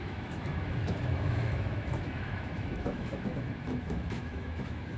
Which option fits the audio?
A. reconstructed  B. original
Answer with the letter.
A